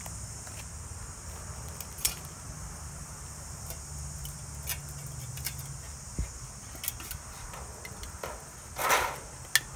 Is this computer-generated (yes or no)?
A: no